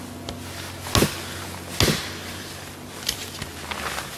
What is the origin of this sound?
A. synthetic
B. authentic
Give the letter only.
B